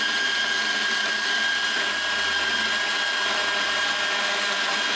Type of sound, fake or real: real